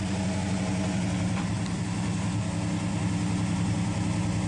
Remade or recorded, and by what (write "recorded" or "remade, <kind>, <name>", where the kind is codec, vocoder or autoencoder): recorded